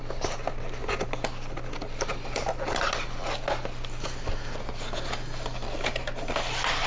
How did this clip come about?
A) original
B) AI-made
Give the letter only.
A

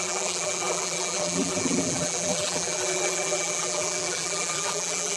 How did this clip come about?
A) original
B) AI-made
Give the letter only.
B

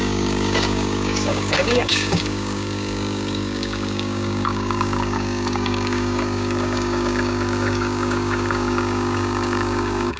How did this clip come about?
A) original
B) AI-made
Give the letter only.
B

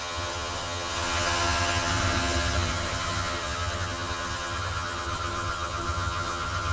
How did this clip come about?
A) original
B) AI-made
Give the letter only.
B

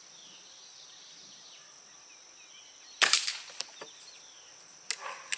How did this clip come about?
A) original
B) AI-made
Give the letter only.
A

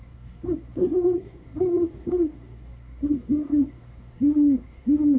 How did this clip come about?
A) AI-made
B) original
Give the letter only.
A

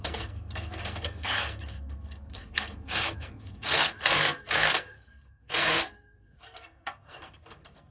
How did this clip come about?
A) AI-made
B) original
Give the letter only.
A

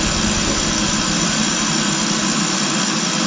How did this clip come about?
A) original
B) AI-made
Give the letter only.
A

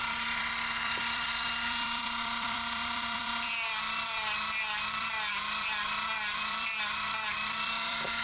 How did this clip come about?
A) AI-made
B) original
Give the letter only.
A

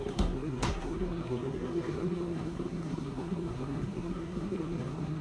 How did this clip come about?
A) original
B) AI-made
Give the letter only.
B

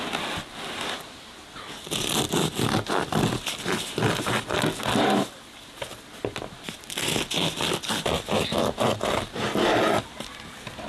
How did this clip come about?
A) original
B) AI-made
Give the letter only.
A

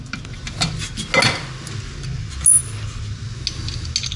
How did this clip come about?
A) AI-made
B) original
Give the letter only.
B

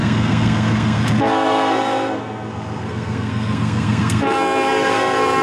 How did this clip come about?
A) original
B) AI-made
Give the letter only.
B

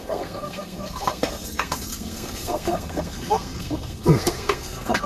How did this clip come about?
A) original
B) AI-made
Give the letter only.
B